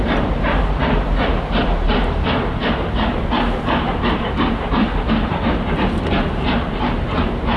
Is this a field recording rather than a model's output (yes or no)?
no